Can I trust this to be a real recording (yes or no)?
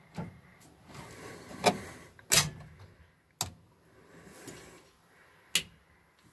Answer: yes